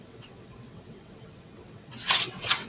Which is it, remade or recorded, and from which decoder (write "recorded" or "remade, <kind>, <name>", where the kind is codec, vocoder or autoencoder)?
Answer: remade, vocoder, WaveNeXt